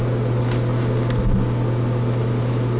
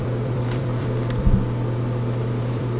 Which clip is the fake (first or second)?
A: second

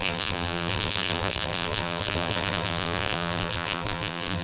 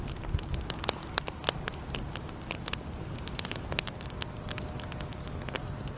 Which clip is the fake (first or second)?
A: first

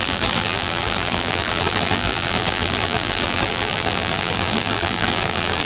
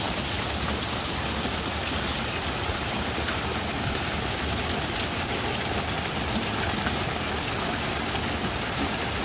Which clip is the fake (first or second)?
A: first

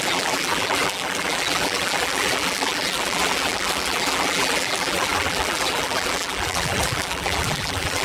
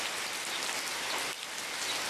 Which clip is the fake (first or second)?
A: first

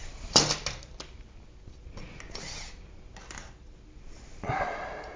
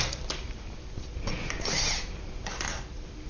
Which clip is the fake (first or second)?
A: second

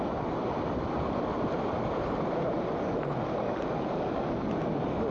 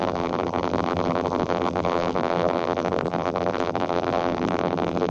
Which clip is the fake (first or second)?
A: second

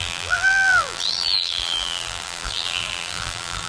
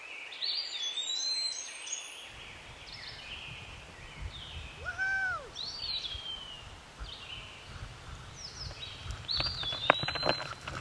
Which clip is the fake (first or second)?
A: first